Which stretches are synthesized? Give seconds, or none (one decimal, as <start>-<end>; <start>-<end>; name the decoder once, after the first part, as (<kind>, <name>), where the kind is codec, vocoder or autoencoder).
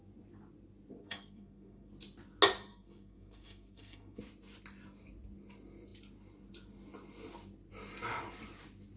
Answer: 1.0-1.9 (codec, SNAC); 2.7-4.2